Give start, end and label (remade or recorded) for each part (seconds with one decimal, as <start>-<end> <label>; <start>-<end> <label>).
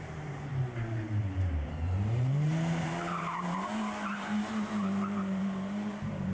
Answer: 0.0-0.5 remade; 0.5-1.2 recorded; 1.2-6.3 remade